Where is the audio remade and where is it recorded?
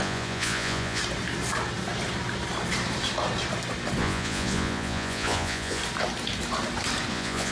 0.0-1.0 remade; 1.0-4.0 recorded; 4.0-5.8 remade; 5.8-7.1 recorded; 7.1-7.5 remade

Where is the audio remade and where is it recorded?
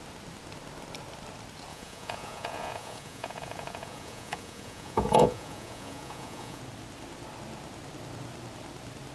0.0-1.7 recorded; 1.7-6.6 remade; 6.6-9.1 recorded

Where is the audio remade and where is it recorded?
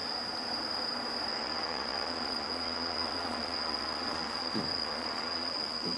0.0-1.3 recorded; 1.3-6.0 remade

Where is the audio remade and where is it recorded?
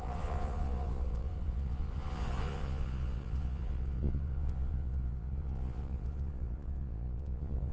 0.0-7.7 remade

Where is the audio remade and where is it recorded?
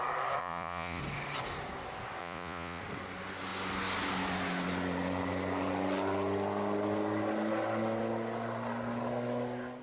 0.0-0.4 recorded; 0.4-1.0 remade; 1.0-2.2 recorded; 2.2-2.8 remade; 2.8-9.8 recorded